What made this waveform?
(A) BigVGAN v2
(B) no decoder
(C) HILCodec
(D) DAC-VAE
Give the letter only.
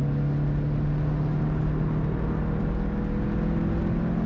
B